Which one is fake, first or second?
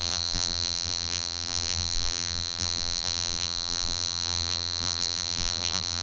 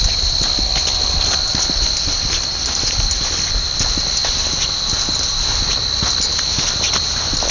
first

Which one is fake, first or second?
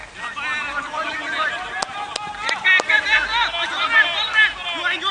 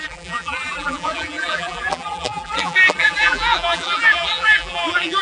second